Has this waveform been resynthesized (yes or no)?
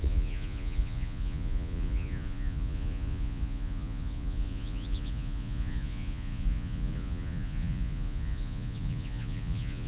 yes